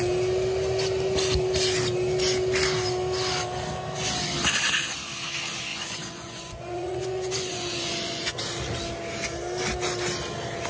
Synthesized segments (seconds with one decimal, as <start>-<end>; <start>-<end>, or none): 5.7-8.4